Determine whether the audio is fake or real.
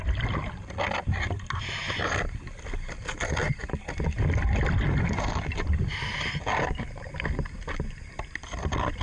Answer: real